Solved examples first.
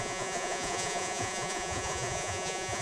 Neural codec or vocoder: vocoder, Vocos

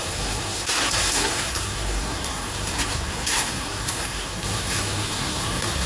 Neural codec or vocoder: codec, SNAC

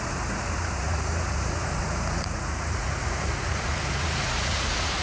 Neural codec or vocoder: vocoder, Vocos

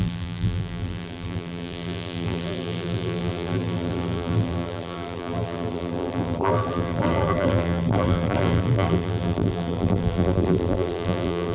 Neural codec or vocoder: vocoder, BigVGAN v2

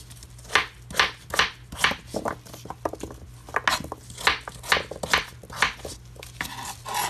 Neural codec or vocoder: none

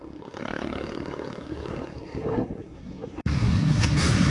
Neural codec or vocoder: codec, SNAC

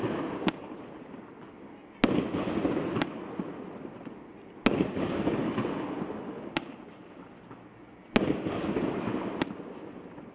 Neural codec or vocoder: none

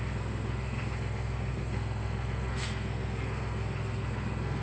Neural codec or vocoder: codec, SNAC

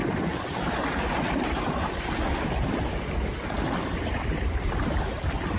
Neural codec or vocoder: none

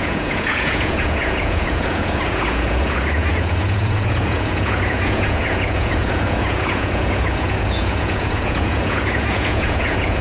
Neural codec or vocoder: vocoder, Vocos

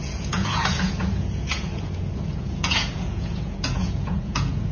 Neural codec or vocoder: vocoder, Vocos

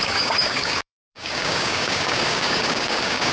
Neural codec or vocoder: codec, DAC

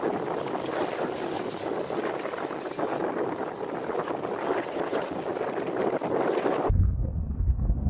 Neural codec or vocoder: none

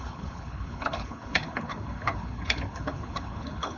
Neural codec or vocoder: codec, HILCodec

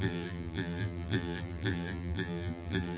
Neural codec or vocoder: vocoder, BigVGAN v2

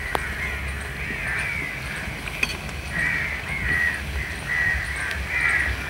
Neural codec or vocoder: none